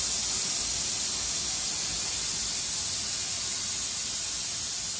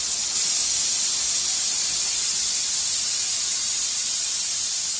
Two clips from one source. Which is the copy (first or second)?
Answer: second